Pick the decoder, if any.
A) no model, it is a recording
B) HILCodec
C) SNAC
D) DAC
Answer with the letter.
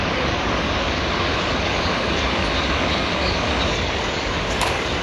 D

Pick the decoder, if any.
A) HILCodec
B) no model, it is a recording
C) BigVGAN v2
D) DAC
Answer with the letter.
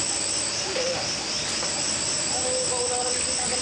B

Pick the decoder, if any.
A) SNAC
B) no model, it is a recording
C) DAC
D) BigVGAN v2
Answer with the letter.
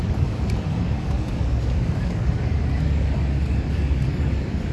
C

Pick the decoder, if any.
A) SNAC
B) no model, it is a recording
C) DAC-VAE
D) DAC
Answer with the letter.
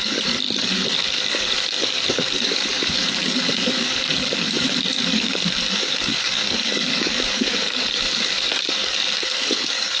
D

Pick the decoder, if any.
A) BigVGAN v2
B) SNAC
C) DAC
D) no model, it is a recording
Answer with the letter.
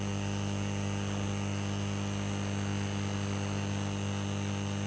D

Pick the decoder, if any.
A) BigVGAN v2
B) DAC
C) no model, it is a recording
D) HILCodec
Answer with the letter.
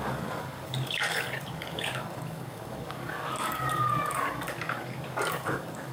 B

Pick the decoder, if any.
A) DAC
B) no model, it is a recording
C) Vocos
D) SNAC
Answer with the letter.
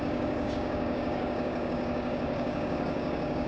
A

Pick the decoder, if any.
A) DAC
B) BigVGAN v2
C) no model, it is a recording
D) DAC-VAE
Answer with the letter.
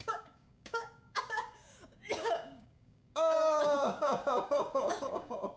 A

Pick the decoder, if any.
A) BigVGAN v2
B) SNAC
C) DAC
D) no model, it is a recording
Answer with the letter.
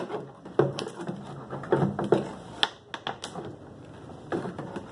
D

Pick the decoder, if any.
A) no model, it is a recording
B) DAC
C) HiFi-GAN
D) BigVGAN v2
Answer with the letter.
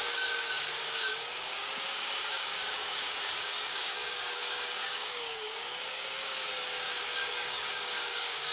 B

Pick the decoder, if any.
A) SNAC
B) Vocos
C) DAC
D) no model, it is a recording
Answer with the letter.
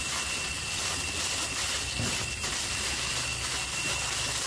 D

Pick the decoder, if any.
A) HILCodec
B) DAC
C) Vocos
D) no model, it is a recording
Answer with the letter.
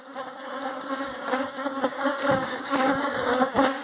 B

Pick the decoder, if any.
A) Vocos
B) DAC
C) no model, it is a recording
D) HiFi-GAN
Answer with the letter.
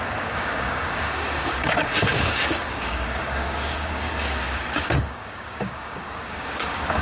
B